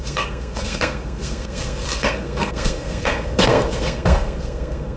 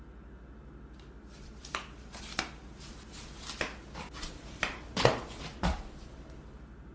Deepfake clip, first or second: first